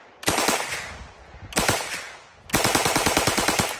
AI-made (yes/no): no